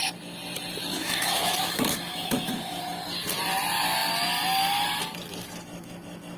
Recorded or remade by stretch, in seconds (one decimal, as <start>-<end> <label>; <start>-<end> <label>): 0.0-0.9 recorded; 0.9-2.8 remade; 2.8-6.4 recorded